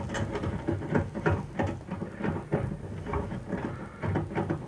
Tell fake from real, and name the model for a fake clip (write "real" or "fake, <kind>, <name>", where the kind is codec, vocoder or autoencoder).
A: real